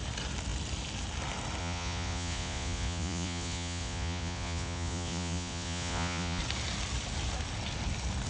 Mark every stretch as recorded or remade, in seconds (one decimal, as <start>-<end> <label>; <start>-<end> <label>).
0.0-1.6 recorded; 1.6-6.4 remade; 6.4-8.3 recorded